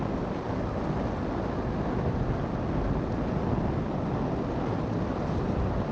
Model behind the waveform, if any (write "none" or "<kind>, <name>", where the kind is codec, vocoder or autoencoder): none